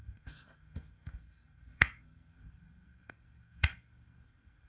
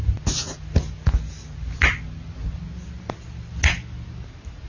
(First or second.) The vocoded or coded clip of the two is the first